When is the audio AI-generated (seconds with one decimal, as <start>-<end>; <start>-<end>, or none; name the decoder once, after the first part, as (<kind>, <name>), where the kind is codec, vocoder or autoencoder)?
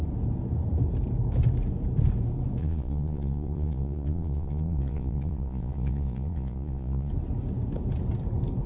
2.6-7.1 (vocoder, Vocos)